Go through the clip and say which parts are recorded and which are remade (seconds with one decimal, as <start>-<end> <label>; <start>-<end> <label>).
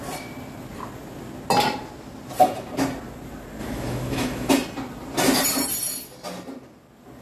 0.0-3.6 recorded; 3.6-4.5 remade; 4.5-7.2 recorded